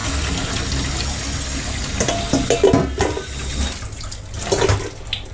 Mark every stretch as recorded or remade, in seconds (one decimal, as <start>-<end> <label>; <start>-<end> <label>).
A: 0.0-5.3 recorded